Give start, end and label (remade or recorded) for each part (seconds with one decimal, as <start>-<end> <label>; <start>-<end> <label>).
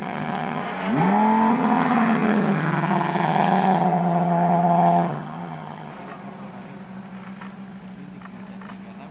0.0-0.6 remade; 0.6-1.5 recorded; 1.5-5.9 remade; 5.9-9.1 recorded